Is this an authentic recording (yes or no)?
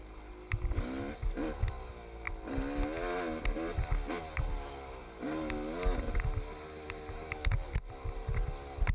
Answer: yes